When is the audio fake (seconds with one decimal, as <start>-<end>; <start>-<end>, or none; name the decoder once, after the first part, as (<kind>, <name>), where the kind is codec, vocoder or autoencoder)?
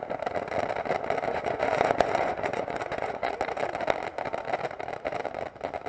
1.3-3.3 (vocoder, Vocos)